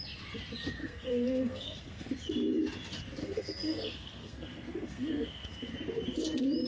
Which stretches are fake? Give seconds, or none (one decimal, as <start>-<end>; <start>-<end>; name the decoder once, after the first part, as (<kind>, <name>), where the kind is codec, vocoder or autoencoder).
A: 0.8-2.1 (codec, SNAC); 3.2-5.7